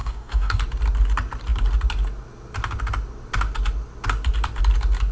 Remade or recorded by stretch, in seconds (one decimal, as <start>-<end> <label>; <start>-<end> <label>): 0.0-0.6 remade; 0.6-5.1 recorded